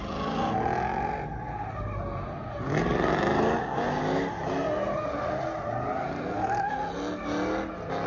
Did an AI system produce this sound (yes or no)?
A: no